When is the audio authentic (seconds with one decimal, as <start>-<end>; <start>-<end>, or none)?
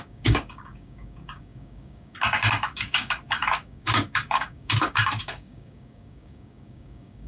none